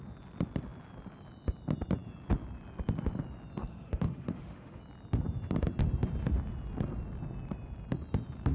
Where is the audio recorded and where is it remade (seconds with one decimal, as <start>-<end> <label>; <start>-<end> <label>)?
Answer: 0.0-3.6 recorded; 3.6-4.8 remade; 4.8-8.5 recorded